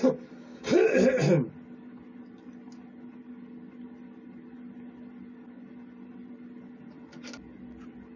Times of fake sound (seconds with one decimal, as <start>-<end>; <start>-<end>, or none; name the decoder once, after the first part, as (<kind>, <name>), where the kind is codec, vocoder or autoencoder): none